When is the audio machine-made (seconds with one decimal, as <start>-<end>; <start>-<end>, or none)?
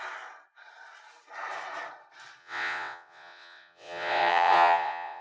2.4-5.2